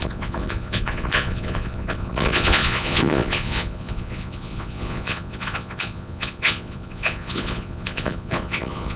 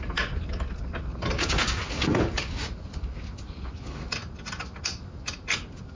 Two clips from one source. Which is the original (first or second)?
second